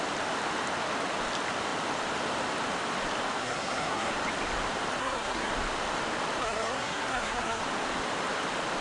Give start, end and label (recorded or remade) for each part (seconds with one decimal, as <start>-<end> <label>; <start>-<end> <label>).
0.0-3.4 recorded; 3.4-4.1 remade; 4.1-5.0 recorded; 5.0-5.5 remade; 5.5-6.4 recorded; 6.4-7.6 remade; 7.6-8.8 recorded